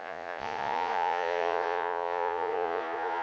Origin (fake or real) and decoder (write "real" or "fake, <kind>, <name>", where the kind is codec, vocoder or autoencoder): fake, vocoder, Vocos